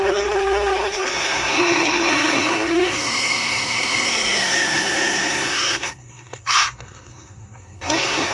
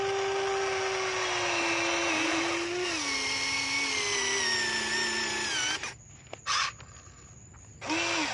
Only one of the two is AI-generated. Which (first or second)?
first